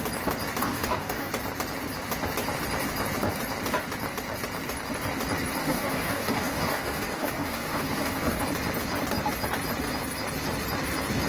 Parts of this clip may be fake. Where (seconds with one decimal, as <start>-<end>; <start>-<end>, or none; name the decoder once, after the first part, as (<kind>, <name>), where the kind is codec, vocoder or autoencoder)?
0.6-1.3 (codec, DAC); 5.6-8.4